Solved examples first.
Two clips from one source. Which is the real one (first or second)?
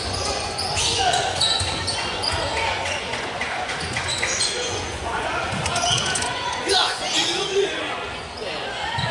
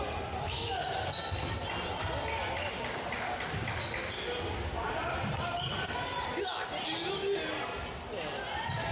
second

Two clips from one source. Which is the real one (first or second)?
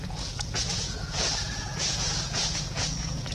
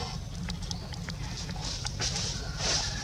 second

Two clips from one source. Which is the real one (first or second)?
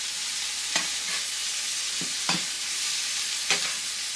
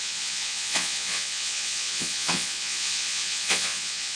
first